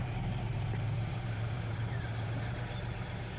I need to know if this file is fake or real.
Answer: fake